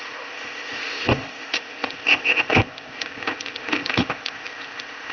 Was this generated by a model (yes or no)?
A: yes